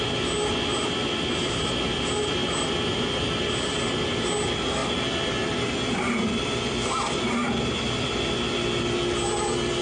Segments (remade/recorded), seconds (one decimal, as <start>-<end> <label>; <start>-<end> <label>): 0.0-2.4 recorded; 2.4-3.2 remade; 3.2-4.8 recorded; 4.8-8.8 remade; 8.8-9.8 recorded